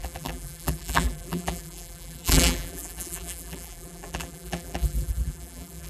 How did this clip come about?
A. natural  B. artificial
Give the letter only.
B